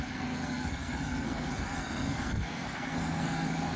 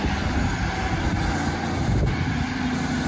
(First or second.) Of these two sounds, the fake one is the first